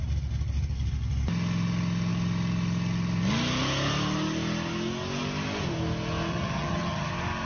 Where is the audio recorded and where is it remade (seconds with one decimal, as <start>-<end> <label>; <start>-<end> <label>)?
0.0-6.3 recorded; 6.3-7.1 remade; 7.1-7.5 recorded